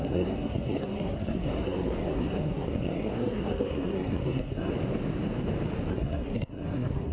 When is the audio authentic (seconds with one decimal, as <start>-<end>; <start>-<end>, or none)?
4.7-5.9